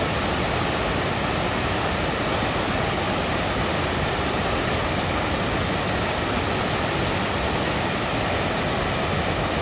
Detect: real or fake real